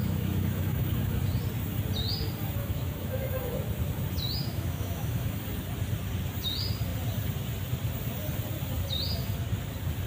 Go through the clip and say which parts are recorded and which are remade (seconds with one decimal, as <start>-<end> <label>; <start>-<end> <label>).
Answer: 0.0-1.2 remade; 1.2-2.6 recorded; 2.6-3.6 remade; 3.6-4.4 recorded; 4.4-5.4 remade; 5.4-10.1 recorded